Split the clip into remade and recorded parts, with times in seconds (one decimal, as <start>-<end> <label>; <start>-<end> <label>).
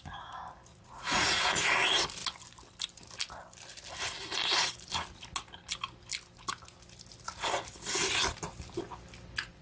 0.0-0.7 recorded; 0.7-1.4 remade; 1.4-9.6 recorded